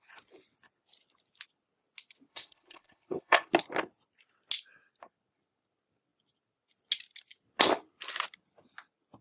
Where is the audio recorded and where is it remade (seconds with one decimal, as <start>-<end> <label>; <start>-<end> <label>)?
0.0-2.3 recorded; 2.3-3.5 remade; 3.5-9.2 recorded